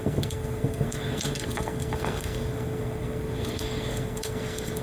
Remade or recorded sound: remade